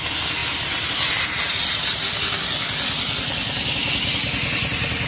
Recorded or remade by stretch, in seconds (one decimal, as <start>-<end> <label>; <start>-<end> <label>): 0.0-5.1 recorded